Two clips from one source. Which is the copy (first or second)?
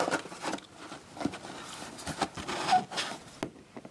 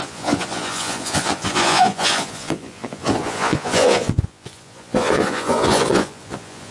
second